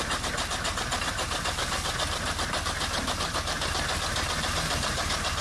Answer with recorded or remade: recorded